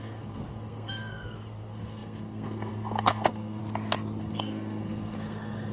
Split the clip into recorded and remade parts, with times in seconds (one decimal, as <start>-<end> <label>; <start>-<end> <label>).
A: 0.0-3.6 remade; 3.6-4.2 recorded; 4.2-5.7 remade